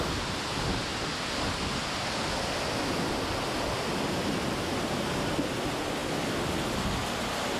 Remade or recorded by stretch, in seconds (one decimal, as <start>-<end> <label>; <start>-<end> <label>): 0.0-7.6 recorded